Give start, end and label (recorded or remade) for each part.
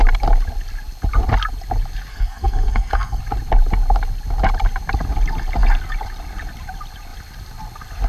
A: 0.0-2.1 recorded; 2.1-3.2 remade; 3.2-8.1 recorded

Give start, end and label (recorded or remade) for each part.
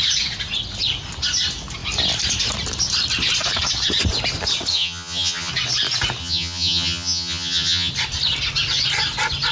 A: 0.0-4.7 recorded; 4.7-5.5 remade; 5.5-6.2 recorded; 6.2-7.9 remade; 7.9-9.5 recorded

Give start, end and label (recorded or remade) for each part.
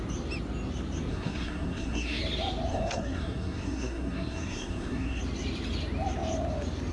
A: 0.0-1.1 recorded; 1.1-2.2 remade; 2.2-2.7 recorded; 2.7-5.2 remade; 5.2-6.9 recorded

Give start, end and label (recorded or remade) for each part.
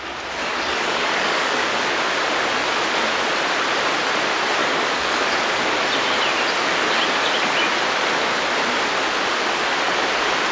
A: 0.0-0.5 recorded; 0.5-1.8 remade; 1.8-4.6 recorded; 4.6-5.3 remade; 5.3-10.5 recorded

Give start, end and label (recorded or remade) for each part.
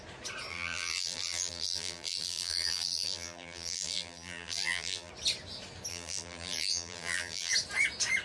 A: 0.0-0.5 recorded; 0.5-5.1 remade; 5.1-5.9 recorded; 5.9-7.5 remade; 7.5-8.2 recorded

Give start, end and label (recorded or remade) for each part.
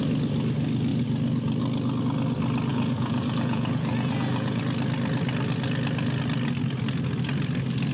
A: 0.0-2.7 recorded; 2.7-4.6 remade; 4.6-7.9 recorded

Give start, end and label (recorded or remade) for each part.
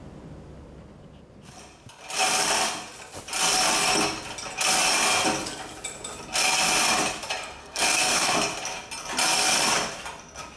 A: 0.0-7.6 recorded; 7.6-8.3 remade; 8.3-10.6 recorded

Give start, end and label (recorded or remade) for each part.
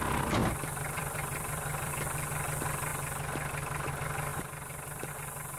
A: 0.0-0.4 recorded; 0.4-1.9 remade; 1.9-4.3 recorded; 4.3-5.1 remade; 5.1-5.6 recorded